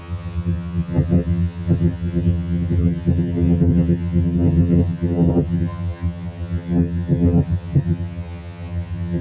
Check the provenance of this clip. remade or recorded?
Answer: remade